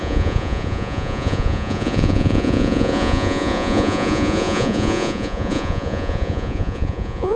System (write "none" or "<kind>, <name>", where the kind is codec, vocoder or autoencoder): vocoder, Vocos